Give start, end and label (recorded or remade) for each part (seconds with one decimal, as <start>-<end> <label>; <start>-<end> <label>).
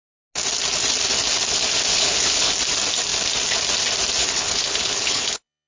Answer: 0.0-1.9 recorded; 1.9-2.5 remade; 2.5-4.2 recorded; 4.2-5.7 remade